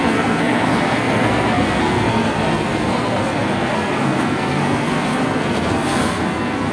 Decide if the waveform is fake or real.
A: fake